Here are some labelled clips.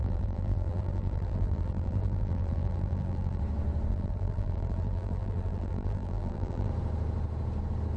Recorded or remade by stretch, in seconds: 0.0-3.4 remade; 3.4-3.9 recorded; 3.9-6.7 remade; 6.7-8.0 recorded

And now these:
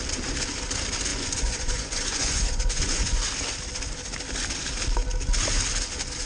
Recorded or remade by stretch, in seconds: 0.0-1.1 recorded; 1.1-3.2 remade; 3.2-6.3 recorded

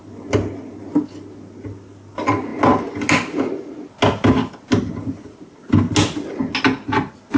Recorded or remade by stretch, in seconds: 0.0-7.4 recorded

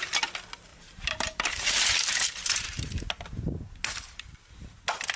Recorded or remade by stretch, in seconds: 0.0-0.7 recorded; 0.7-3.1 remade; 3.1-5.2 recorded